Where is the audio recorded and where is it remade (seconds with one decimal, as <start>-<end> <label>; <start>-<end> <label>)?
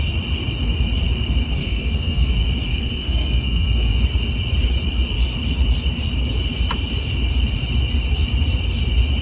0.0-1.6 recorded; 1.6-2.3 remade; 2.3-2.7 recorded; 2.7-3.9 remade; 3.9-9.2 recorded